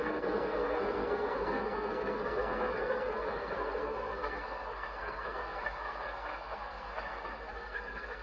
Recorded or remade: remade